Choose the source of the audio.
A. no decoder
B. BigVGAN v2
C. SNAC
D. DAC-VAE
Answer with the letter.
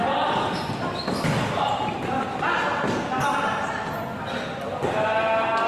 A